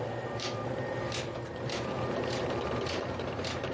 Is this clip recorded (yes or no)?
no